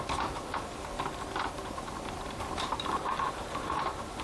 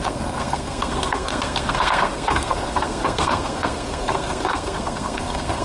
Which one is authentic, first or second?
first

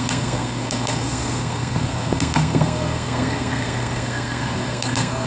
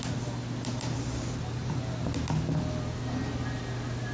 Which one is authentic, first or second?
second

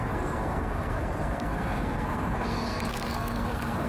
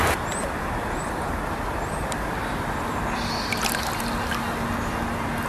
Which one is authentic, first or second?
second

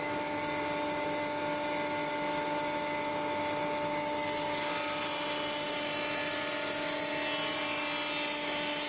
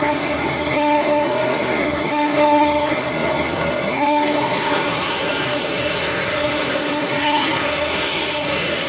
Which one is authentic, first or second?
first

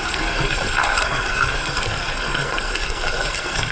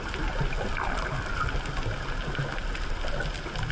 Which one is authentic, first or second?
second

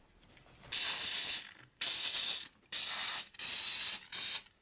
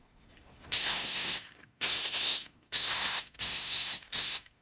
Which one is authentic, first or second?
first